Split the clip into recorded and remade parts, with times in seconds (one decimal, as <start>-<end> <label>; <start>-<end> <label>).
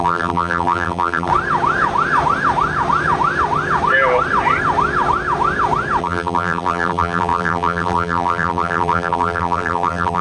0.0-1.3 remade; 1.3-6.0 recorded; 6.0-10.2 remade